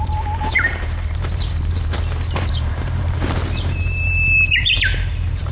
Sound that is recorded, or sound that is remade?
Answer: remade